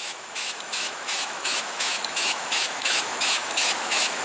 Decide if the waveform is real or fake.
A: fake